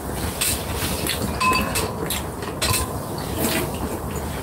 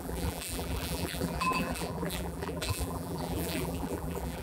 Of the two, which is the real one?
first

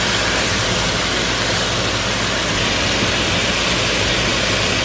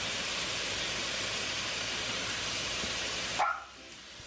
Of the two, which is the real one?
first